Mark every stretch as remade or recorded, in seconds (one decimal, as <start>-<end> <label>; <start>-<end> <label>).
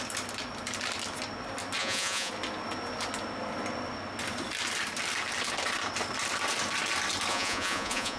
0.0-1.8 recorded; 1.8-2.3 remade; 2.3-7.3 recorded; 7.3-8.2 remade